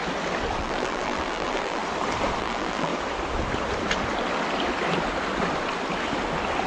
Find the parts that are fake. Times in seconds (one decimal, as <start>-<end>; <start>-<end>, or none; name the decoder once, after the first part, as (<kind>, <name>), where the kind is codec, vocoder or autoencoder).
0.6-1.8 (vocoder, BigVGAN v2); 2.4-2.9